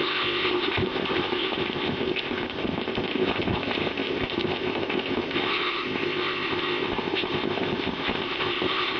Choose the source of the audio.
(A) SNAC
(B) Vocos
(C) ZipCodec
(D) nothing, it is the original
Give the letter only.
C